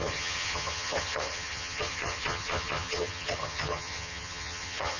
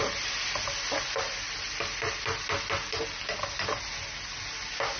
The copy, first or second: first